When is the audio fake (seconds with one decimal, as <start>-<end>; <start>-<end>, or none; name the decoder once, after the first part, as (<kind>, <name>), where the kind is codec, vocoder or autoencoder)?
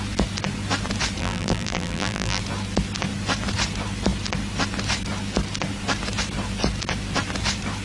1.2-2.4 (vocoder, BigVGAN v2)